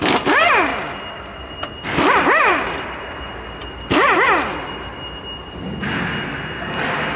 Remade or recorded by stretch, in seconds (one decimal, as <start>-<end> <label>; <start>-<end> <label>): 0.0-0.7 recorded; 0.7-1.3 remade; 1.3-7.2 recorded